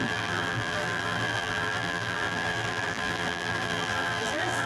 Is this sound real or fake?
fake